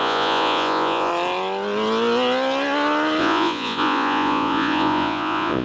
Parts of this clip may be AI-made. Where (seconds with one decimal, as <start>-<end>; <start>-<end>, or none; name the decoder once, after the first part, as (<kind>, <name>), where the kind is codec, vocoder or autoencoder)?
0.0-1.1 (vocoder, Vocos); 3.2-5.6